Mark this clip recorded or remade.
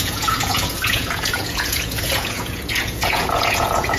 remade